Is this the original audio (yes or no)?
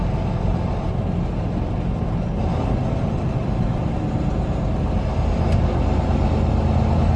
yes